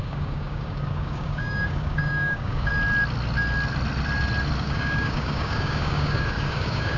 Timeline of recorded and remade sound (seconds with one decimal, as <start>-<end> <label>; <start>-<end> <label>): 0.0-2.7 remade; 2.7-4.6 recorded; 4.6-7.0 remade